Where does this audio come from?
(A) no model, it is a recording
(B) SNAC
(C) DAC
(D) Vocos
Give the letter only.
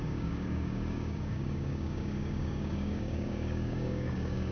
C